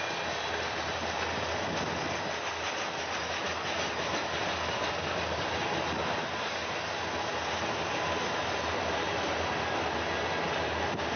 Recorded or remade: recorded